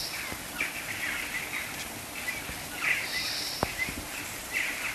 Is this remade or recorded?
recorded